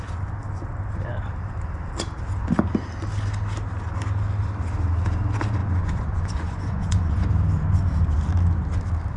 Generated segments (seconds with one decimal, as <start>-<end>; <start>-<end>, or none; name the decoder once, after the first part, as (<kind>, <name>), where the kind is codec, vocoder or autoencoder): 5.6-7.3 (vocoder, Vocos)